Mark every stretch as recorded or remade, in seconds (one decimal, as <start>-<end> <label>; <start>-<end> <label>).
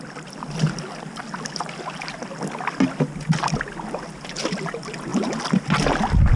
0.0-6.4 recorded